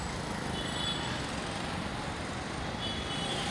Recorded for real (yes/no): yes